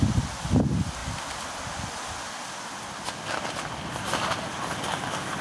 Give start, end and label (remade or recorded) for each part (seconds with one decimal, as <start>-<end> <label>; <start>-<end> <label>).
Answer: 0.0-5.4 recorded